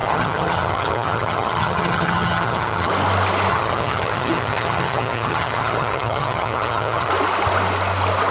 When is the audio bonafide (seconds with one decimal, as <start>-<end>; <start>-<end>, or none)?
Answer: 2.9-3.5; 7.1-8.3